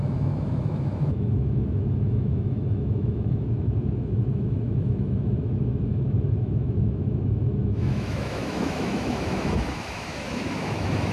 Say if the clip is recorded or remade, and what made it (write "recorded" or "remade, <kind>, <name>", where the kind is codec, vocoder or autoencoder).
remade, autoencoder, DAC-VAE